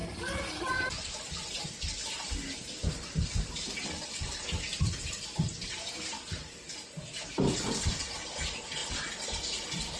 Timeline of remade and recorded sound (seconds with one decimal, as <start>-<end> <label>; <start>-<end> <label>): 0.0-6.4 remade; 6.4-7.2 recorded; 7.2-8.8 remade; 8.8-10.0 recorded